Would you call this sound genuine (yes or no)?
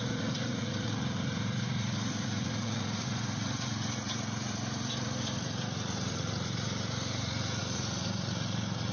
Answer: no